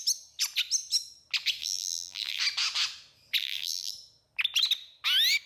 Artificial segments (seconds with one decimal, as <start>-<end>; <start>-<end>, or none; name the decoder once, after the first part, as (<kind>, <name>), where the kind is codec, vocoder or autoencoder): 1.6-2.4 (vocoder, BigVGAN v2); 3.4-3.9